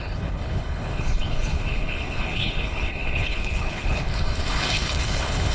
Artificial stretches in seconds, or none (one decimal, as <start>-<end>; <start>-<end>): 0.0-5.5